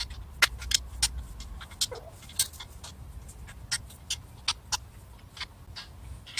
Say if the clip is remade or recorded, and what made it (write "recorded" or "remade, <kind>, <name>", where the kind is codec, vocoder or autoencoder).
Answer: recorded